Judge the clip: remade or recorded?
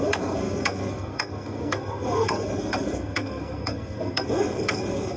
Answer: remade